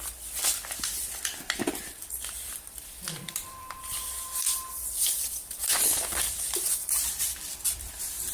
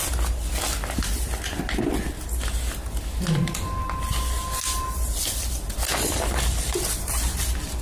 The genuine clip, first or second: second